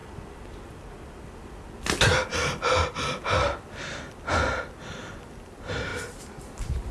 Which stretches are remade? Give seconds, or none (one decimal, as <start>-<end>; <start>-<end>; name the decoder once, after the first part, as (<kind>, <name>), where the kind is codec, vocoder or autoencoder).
none